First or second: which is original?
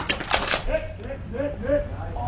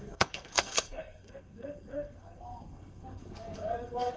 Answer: first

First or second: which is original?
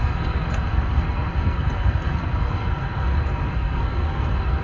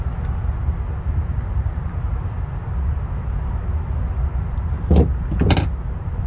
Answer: second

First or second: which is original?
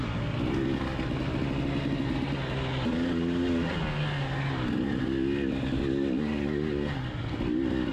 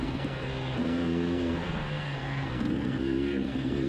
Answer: first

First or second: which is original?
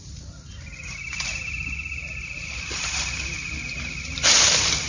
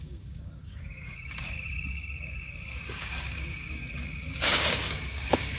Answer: first